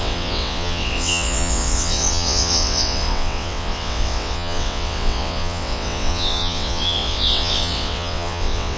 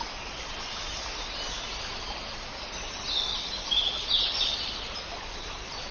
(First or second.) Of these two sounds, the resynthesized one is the first